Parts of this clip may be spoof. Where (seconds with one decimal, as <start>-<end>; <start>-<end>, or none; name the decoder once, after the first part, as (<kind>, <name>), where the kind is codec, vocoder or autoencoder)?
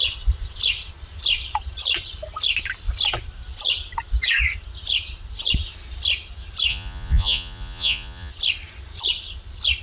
6.7-8.3 (vocoder, Vocos)